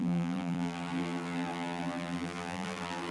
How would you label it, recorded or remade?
remade